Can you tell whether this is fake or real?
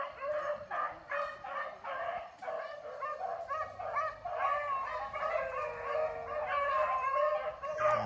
real